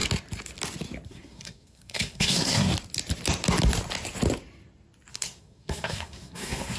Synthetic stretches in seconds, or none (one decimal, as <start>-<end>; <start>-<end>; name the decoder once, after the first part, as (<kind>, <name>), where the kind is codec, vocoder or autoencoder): 1.1-2.7 (codec, SNAC); 5.1-6.8